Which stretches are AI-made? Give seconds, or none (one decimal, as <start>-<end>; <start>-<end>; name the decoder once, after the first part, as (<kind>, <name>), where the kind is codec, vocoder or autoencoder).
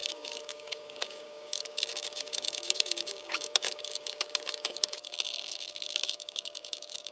0.0-7.1 (codec, DAC)